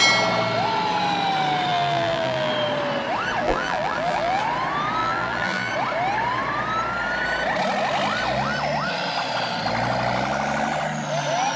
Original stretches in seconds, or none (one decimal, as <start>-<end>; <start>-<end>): 0.0-1.7; 2.5-3.4; 4.4-5.0; 5.7-11.6